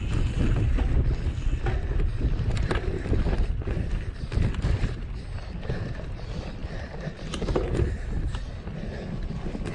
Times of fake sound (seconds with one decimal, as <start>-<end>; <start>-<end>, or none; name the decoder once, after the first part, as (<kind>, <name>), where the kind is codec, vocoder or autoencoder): none